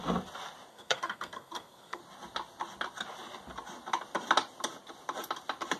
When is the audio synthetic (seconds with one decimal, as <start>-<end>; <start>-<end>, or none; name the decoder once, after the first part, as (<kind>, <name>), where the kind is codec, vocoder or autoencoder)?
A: 0.7-2.0 (codec, SNAC)